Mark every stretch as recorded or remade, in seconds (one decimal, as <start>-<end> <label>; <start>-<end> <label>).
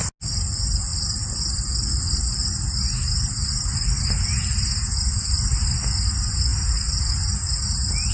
0.0-0.9 recorded; 0.9-2.2 remade; 2.2-8.1 recorded